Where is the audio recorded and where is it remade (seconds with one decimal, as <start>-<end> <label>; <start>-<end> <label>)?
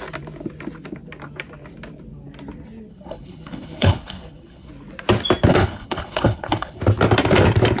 0.0-2.9 recorded; 2.9-4.7 remade; 4.7-5.5 recorded; 5.5-6.8 remade; 6.8-7.8 recorded